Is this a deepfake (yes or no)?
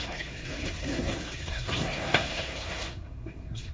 yes